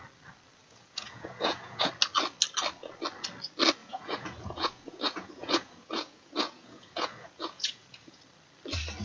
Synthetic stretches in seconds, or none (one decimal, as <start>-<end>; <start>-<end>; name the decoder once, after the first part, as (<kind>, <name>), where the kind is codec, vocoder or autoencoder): 0.6-1.9 (vocoder, Vocos); 3.8-8.2